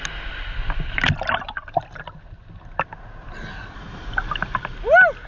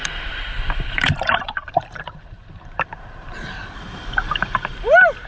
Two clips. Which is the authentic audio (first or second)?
first